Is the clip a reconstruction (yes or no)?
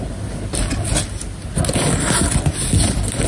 no